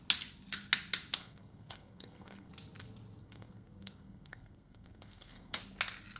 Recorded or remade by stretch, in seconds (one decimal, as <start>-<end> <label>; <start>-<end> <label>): 0.0-1.2 recorded; 1.2-2.5 remade; 2.5-3.2 recorded; 3.2-5.6 remade; 5.6-6.2 recorded